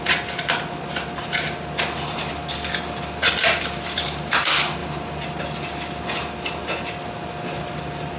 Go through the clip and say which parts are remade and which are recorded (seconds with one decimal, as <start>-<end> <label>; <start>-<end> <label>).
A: 0.0-3.4 recorded; 3.4-4.3 remade; 4.3-8.2 recorded